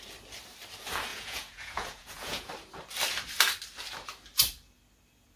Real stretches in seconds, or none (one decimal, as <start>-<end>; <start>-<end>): 0.0-1.1; 2.5-5.4